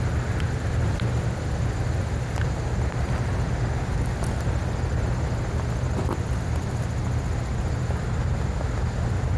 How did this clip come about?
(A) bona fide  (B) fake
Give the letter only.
A